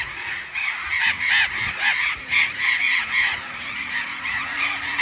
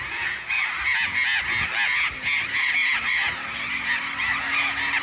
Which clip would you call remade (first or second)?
first